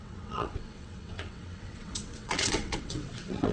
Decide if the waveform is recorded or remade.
remade